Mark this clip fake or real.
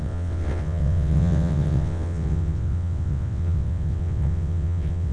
fake